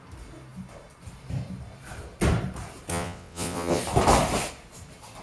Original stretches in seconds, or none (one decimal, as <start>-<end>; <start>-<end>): 0.0-2.9; 3.8-5.2